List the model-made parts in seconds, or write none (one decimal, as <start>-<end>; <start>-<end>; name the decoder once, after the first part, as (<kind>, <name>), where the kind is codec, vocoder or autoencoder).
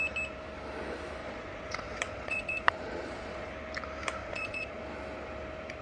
1.2-3.5 (vocoder, Vocos); 4.2-4.8